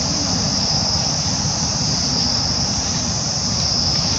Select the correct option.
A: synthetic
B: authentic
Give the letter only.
A